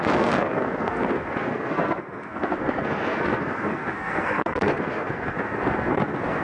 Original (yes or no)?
no